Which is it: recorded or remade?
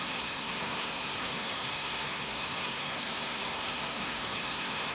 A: remade